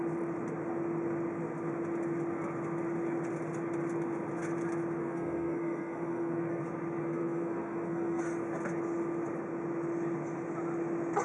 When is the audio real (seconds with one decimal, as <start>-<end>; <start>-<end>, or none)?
0.0-5.0; 6.6-7.0; 8.2-11.2